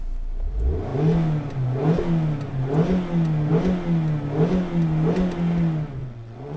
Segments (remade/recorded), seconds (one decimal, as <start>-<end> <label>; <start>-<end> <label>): 0.0-6.0 recorded; 6.0-6.6 remade